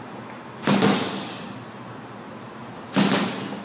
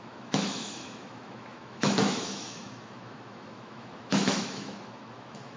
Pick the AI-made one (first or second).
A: second